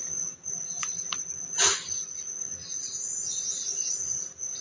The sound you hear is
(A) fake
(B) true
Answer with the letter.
B